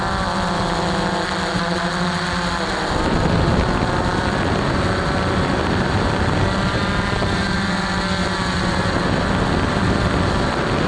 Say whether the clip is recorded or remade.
recorded